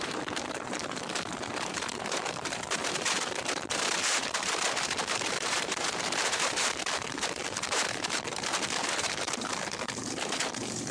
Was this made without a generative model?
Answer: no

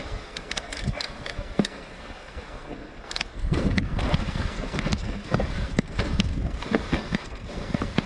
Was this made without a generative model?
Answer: no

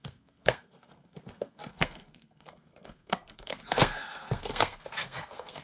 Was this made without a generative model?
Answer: no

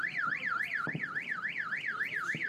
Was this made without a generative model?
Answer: yes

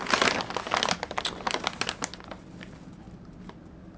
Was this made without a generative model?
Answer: yes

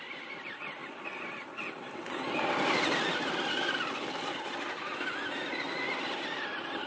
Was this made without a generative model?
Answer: yes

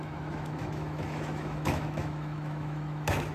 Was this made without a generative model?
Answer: no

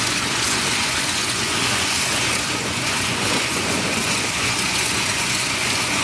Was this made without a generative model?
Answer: no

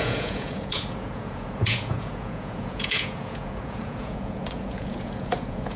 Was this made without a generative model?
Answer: no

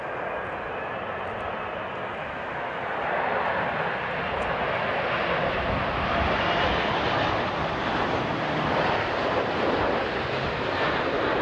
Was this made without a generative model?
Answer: yes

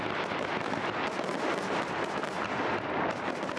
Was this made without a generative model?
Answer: yes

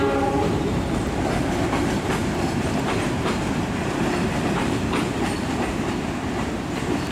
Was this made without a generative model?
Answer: no